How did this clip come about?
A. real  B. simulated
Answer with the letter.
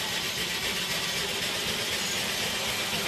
A